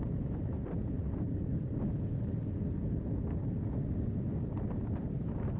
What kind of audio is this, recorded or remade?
recorded